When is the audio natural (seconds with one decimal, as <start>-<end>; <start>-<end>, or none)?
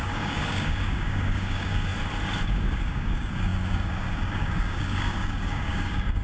1.9-2.6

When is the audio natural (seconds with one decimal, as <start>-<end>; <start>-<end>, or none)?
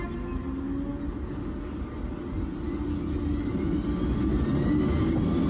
0.0-5.5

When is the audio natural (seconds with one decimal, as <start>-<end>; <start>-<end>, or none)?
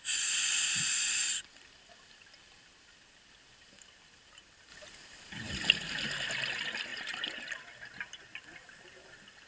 0.0-9.5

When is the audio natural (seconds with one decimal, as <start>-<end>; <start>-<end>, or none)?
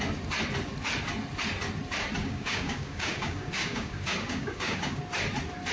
0.0-2.2; 5.0-5.7